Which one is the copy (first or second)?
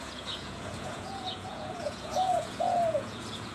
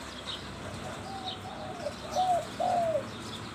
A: first